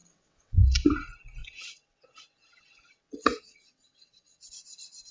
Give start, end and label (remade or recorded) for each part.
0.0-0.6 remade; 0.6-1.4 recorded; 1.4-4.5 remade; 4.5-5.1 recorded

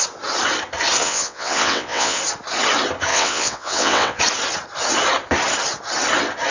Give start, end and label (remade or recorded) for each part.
0.0-1.0 recorded; 1.0-2.2 remade; 2.2-3.1 recorded; 3.1-4.2 remade; 4.2-6.5 recorded

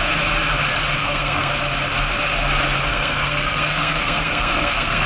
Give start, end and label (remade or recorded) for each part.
0.0-1.0 recorded; 1.0-1.5 remade; 1.5-2.9 recorded; 2.9-5.1 remade

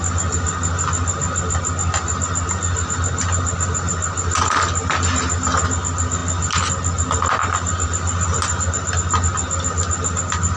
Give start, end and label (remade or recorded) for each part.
0.0-10.6 recorded

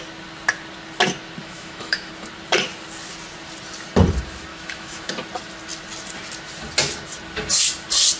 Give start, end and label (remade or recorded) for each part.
0.0-1.4 recorded; 1.4-2.1 remade; 2.1-4.5 recorded; 4.5-5.1 remade; 5.1-8.2 recorded

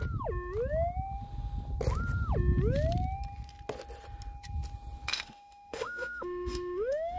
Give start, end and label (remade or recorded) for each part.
0.0-5.1 recorded; 5.1-7.2 remade

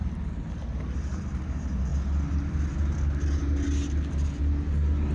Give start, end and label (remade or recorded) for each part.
0.0-5.1 recorded

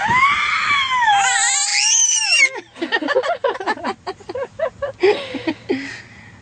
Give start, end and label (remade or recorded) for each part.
0.0-3.4 recorded; 3.4-4.9 remade; 4.9-6.4 recorded